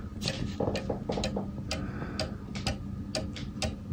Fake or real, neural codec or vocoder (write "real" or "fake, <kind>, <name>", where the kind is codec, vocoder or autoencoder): real